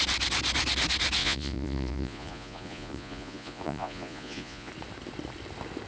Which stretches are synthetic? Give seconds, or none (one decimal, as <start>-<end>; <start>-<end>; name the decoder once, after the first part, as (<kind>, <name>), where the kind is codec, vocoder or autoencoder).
1.2-4.7 (vocoder, Vocos)